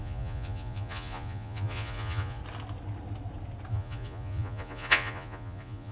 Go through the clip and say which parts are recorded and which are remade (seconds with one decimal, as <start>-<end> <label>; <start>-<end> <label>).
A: 0.0-2.4 remade; 2.4-3.7 recorded; 3.7-5.9 remade